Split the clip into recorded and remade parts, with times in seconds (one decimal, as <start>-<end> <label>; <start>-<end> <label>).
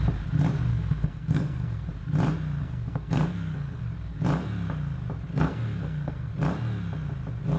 0.0-0.7 recorded; 0.7-1.9 remade; 1.9-2.6 recorded; 2.6-3.8 remade; 3.8-5.3 recorded; 5.3-6.3 remade; 6.3-7.6 recorded